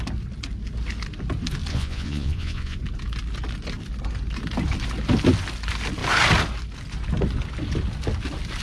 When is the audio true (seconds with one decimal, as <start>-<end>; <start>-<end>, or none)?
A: 0.0-1.7; 2.8-8.6